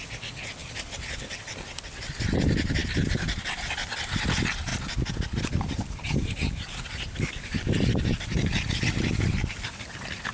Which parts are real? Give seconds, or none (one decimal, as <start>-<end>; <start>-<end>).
0.0-10.3